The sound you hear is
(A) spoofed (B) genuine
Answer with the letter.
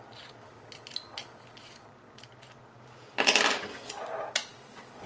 B